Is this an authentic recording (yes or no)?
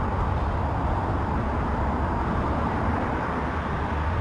yes